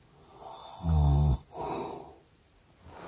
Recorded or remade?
recorded